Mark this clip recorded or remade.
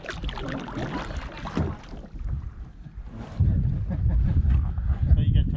recorded